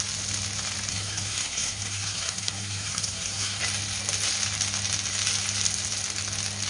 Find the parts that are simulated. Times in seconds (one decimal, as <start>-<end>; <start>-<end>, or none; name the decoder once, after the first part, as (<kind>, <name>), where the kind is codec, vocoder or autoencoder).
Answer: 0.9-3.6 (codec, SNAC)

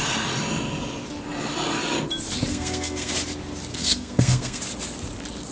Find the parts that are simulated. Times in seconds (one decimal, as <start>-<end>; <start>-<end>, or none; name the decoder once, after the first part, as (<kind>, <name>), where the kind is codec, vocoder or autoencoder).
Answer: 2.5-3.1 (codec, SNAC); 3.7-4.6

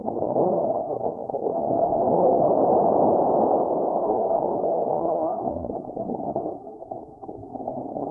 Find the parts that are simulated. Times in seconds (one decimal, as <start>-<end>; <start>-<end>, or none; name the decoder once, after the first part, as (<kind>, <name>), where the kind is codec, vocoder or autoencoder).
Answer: 0.0-2.5 (codec, SNAC); 4.0-8.1